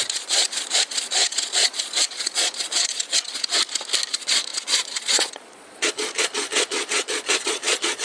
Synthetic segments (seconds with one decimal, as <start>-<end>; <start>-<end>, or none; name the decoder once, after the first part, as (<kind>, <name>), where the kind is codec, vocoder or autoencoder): 0.0-3.6 (vocoder, Vocos); 4.1-8.0